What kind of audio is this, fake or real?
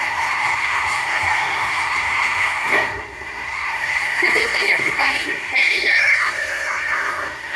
fake